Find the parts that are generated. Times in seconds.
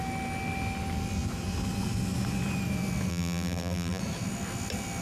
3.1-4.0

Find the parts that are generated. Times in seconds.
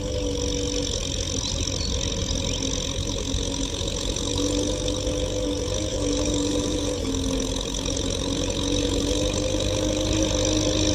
5.9-7.1